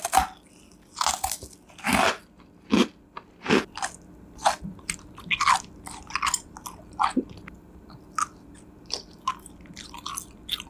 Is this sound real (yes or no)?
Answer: yes